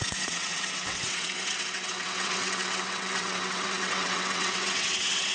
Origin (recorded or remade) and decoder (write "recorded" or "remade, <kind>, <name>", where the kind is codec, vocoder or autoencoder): remade, vocoder, WaveNeXt